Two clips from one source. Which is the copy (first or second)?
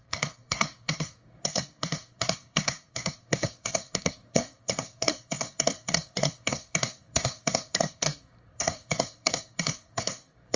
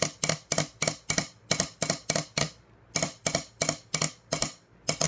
first